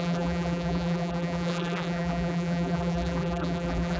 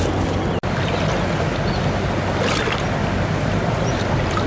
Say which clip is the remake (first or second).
first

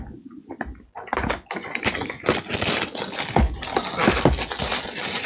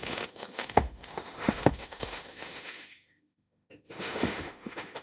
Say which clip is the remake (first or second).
second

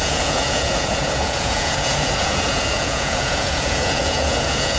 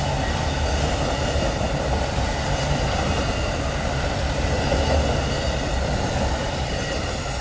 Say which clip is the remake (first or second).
first